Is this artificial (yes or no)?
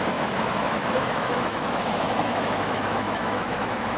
yes